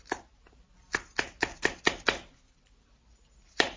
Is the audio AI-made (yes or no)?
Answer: no